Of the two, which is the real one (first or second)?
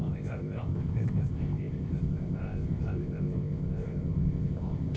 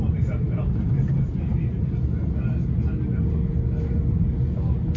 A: second